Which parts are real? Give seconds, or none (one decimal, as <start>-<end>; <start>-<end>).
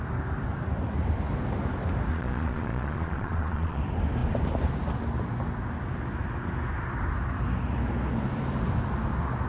0.0-2.1; 3.8-9.5